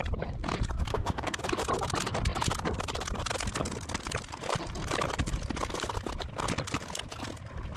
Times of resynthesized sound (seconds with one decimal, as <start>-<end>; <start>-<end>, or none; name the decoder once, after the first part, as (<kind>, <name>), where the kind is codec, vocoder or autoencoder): 0.9-1.4 (autoencoder, DAC-VAE)